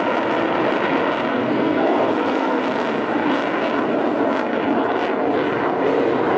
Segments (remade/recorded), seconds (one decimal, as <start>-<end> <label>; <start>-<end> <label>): 0.0-1.3 recorded; 1.3-2.6 remade; 2.6-6.4 recorded